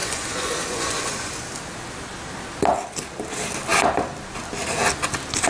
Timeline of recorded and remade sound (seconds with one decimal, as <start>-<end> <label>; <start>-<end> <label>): 0.0-1.3 remade; 1.3-5.5 recorded